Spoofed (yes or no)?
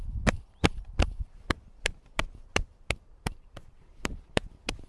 yes